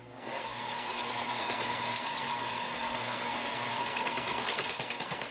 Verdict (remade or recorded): remade